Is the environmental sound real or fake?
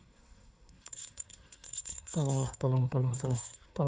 fake